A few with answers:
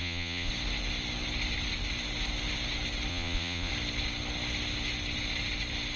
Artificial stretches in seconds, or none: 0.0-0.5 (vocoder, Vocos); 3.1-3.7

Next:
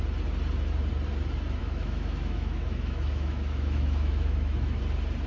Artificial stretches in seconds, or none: 1.6-4.8 (autoencoder, DAC-VAE)